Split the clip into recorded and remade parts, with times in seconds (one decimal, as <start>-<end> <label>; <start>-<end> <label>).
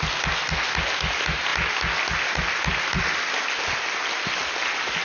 0.0-5.0 recorded